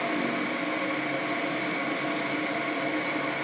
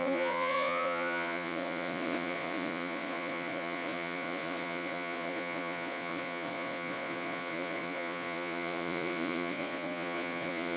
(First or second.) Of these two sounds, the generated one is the second